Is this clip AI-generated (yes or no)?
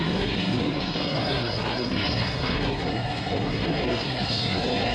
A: yes